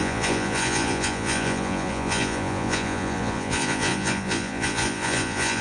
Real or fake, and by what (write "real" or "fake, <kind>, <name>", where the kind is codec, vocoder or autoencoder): fake, vocoder, Vocos